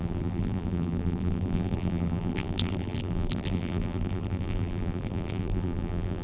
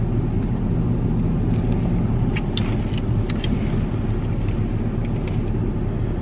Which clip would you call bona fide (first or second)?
second